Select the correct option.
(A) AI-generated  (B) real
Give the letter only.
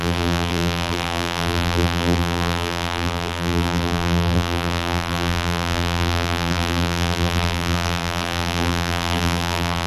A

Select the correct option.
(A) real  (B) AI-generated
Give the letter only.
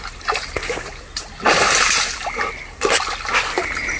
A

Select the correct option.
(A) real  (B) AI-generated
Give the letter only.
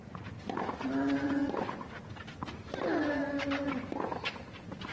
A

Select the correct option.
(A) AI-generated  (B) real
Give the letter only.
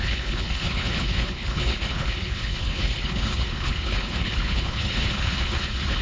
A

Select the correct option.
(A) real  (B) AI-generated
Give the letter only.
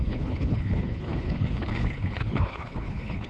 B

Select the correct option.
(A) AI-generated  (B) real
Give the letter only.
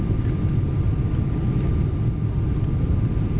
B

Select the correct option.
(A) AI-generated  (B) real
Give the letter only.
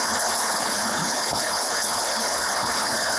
A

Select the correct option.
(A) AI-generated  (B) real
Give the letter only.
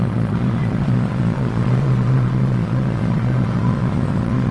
A